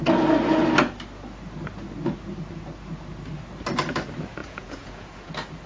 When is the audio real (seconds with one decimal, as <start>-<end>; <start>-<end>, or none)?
0.0-4.4; 5.3-5.7

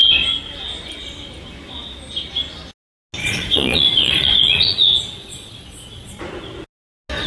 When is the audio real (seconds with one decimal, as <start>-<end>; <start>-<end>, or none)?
0.0-3.2; 6.2-7.3

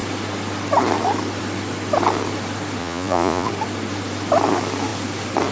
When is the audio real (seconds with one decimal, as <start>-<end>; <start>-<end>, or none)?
0.0-2.8; 3.5-5.5

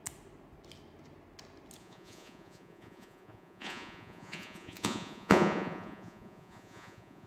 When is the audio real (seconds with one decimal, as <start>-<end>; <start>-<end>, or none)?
0.0-1.8

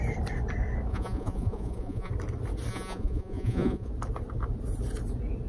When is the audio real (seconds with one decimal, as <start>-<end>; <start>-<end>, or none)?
0.0-0.9; 2.1-2.7; 3.9-5.5

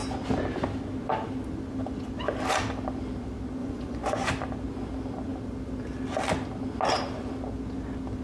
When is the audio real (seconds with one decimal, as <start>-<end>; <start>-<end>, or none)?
0.0-3.6; 4.3-8.2

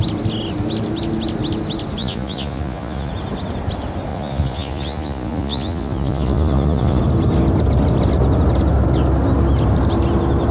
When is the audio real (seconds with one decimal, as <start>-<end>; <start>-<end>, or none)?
0.0-2.0; 3.1-4.1; 7.0-10.5

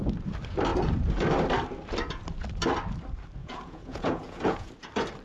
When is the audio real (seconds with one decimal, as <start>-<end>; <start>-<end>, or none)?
0.0-3.4; 4.7-5.2